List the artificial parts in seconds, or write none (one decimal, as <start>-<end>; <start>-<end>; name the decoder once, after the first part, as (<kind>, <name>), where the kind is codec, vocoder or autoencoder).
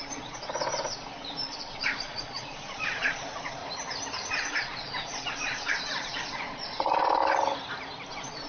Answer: 0.0-3.6 (vocoder, Vocos); 4.3-7.2; 8.1-8.5